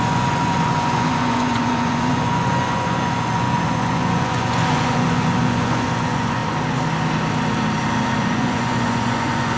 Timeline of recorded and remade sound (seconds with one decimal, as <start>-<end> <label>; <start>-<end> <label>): 0.0-6.4 remade; 6.4-8.2 recorded; 8.2-9.6 remade

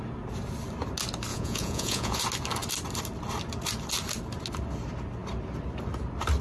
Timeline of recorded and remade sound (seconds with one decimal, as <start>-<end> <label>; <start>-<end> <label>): 0.0-1.3 recorded; 1.3-2.2 remade; 2.2-6.4 recorded

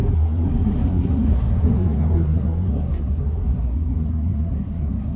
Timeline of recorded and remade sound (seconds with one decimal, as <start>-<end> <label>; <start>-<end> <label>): 0.0-5.2 remade

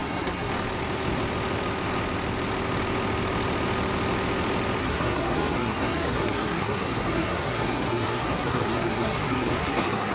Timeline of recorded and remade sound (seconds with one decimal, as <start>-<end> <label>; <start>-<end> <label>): 0.0-0.5 remade; 0.5-4.8 recorded; 4.8-10.1 remade

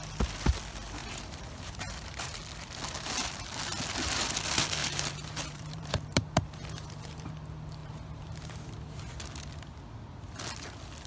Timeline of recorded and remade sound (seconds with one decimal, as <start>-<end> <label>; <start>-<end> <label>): 0.0-1.0 recorded; 1.0-2.4 remade; 2.4-4.8 recorded; 4.8-7.3 remade; 7.3-7.8 recorded; 7.8-9.1 remade; 9.1-11.1 recorded